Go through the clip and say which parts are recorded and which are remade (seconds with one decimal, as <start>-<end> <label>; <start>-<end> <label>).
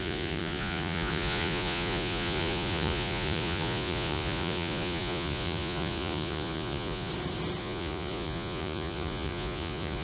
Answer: 0.0-7.1 remade; 7.1-7.6 recorded; 7.6-10.0 remade